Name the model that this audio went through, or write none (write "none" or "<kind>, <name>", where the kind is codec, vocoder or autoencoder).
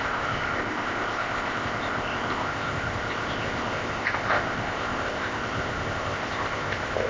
codec, ZipCodec